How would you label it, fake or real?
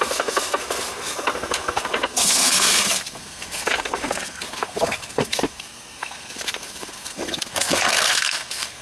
fake